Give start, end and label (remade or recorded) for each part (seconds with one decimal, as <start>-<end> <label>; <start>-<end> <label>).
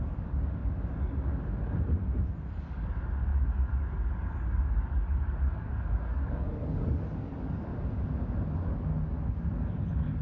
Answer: 0.0-0.6 remade; 0.6-2.6 recorded; 2.6-7.7 remade; 7.7-8.5 recorded; 8.5-10.2 remade